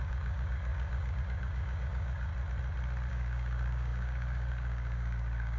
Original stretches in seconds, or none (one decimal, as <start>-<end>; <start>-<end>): 2.3-3.1